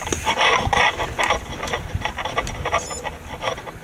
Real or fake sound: real